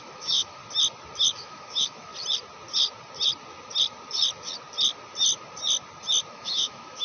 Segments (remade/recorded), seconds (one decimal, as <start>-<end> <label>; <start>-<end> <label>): 0.0-0.6 remade; 0.6-1.2 recorded; 1.2-2.1 remade; 2.1-6.3 recorded; 6.3-7.0 remade